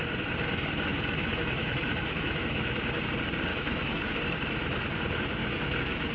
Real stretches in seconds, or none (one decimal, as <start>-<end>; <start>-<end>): 0.0-0.9; 2.8-3.5; 4.2-5.4